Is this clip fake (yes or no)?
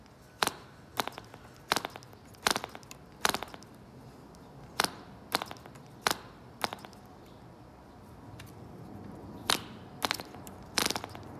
no